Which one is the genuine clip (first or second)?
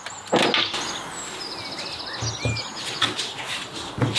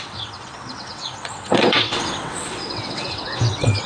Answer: first